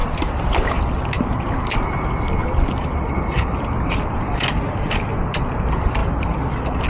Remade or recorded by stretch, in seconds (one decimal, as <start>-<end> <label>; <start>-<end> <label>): 0.0-6.9 recorded